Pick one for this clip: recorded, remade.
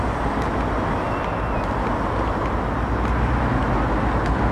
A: recorded